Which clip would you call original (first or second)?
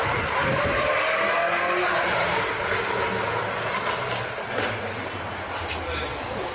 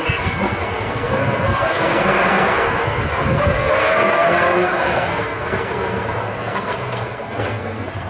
first